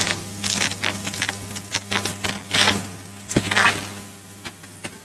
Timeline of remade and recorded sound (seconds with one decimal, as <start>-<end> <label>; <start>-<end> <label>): 0.0-5.0 recorded